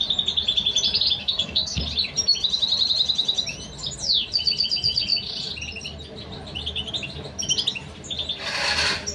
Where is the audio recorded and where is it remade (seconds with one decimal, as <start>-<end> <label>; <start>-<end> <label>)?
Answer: 0.0-1.2 recorded; 1.2-1.8 remade; 1.8-9.1 recorded